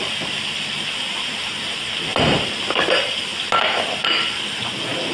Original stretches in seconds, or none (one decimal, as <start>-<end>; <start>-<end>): 0.0-5.1